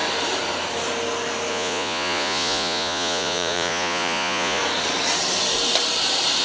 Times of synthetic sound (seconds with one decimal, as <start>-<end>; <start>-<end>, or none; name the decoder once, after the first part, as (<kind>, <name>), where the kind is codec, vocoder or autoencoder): 1.5-4.6 (vocoder, Vocos)